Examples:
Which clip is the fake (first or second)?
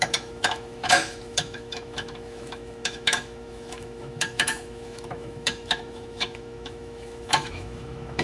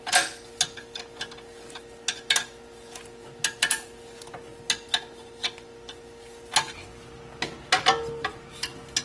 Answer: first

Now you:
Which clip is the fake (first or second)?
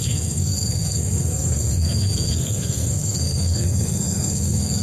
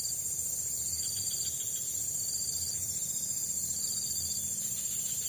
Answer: first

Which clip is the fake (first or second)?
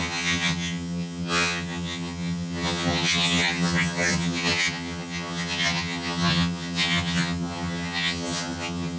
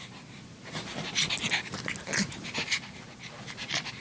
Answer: first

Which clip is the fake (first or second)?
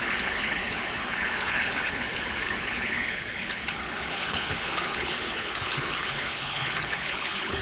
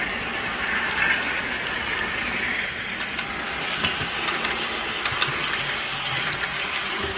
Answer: first